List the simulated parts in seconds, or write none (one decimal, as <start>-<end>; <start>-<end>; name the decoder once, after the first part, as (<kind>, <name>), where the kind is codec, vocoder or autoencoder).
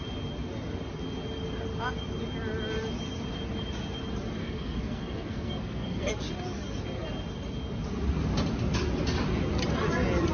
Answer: 4.4-6.1 (codec, SNAC)